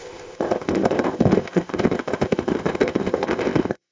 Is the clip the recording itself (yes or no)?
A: no